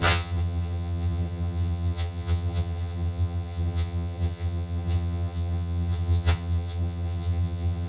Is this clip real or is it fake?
fake